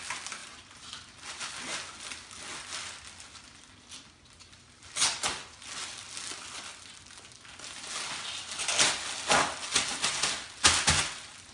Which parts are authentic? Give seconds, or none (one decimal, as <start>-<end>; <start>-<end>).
0.0-0.4; 1.4-11.5